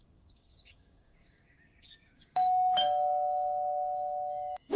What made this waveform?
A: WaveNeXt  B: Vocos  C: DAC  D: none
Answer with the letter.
C